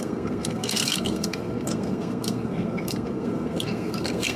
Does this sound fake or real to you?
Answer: fake